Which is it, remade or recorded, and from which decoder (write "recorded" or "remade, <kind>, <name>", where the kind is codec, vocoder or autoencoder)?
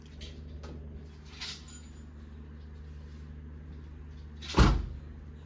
recorded